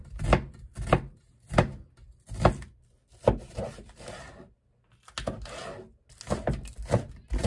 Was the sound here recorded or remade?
recorded